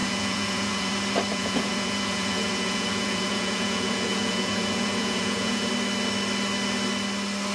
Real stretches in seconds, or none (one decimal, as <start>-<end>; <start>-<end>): 0.9-1.3; 5.7-7.5